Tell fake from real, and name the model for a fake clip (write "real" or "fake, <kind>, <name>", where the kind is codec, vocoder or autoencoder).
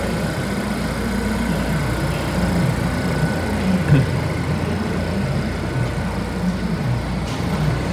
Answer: real